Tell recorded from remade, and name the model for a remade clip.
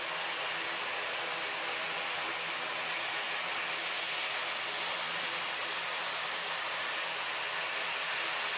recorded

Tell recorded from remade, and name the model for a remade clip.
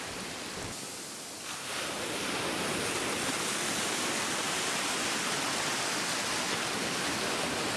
recorded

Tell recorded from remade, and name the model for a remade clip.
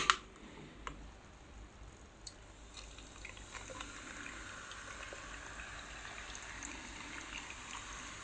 recorded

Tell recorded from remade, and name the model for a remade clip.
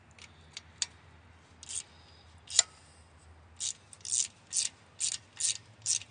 recorded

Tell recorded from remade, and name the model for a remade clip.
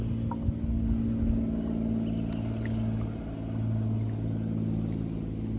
recorded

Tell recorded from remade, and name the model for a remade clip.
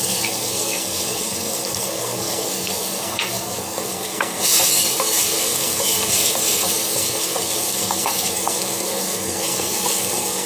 remade, codec, SNAC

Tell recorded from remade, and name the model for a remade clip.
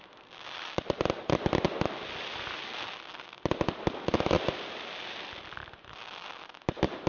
recorded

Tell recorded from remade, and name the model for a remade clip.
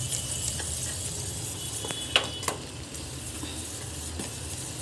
recorded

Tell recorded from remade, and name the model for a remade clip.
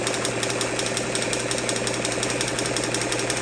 recorded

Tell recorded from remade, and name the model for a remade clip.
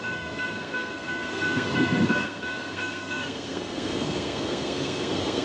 remade, codec, SNAC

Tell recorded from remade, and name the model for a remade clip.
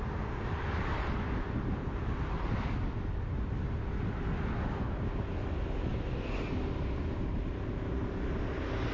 recorded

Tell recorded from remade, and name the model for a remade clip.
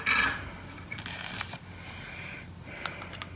recorded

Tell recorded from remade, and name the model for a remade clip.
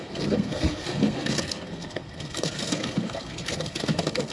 remade, codec, SNAC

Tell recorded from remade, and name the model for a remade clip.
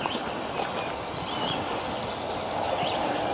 recorded